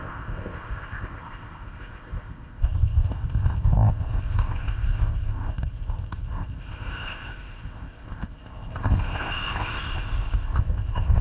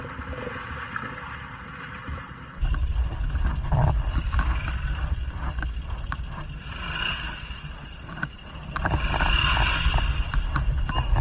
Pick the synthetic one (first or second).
first